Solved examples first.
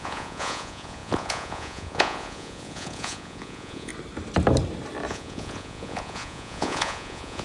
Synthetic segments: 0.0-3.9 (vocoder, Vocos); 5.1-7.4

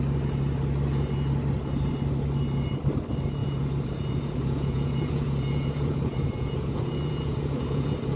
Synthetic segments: 3.4-8.2 (vocoder, Vocos)

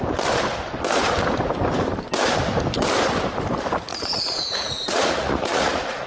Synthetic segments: 3.9-6.1 (vocoder, Vocos)

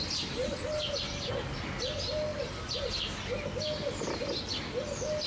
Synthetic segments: none